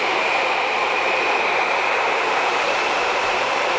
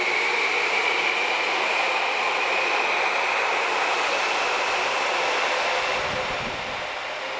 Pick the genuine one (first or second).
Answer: second